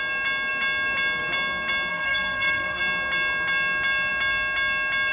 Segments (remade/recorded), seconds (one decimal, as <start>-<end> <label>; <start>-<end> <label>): 0.0-1.9 recorded; 1.9-2.8 remade; 2.8-5.1 recorded